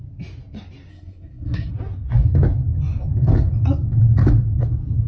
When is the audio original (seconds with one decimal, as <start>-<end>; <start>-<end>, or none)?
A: 0.0-0.9; 1.7-5.1